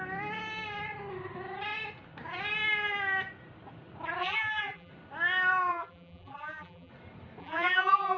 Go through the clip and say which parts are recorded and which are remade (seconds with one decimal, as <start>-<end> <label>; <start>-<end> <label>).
0.0-4.2 recorded; 4.2-4.9 remade; 4.9-5.7 recorded; 5.7-6.9 remade; 6.9-7.4 recorded; 7.4-8.2 remade